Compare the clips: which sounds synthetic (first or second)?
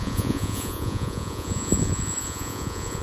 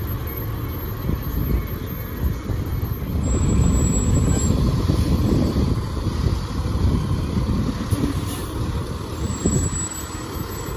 first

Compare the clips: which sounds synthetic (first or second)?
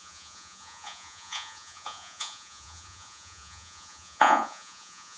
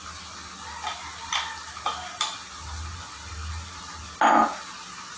first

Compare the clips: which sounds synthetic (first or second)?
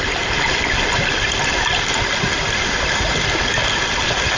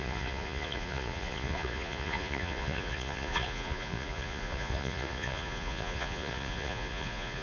second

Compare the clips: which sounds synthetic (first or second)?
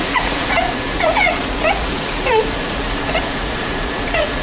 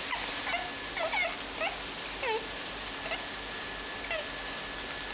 first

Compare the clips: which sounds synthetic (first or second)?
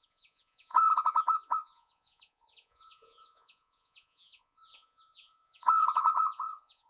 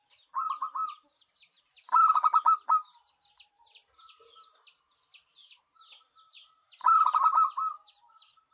first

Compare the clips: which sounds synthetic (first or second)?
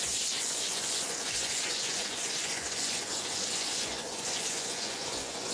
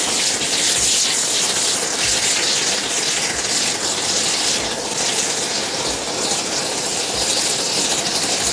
first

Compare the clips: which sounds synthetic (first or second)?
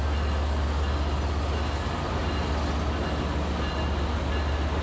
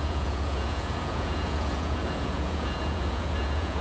second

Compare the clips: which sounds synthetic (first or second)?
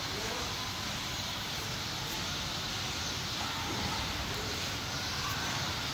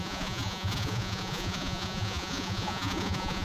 second